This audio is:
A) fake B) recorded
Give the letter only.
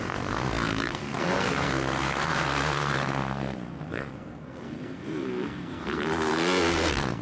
A